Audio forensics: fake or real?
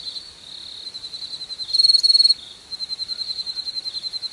real